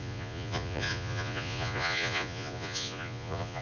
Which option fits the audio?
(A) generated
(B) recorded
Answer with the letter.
A